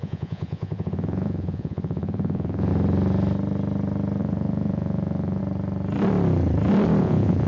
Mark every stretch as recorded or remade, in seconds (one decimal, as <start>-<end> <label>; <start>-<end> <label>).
0.0-2.7 remade; 2.7-4.2 recorded; 4.2-5.4 remade; 5.4-7.0 recorded; 7.0-7.5 remade